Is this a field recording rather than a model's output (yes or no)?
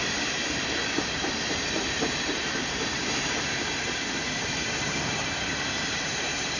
no